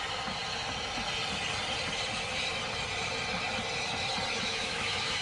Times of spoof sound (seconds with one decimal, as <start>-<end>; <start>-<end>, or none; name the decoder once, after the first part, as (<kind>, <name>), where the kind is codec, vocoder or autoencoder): 4.5-5.2 (autoencoder, DAC-VAE)